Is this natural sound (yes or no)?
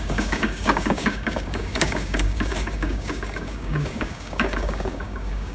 no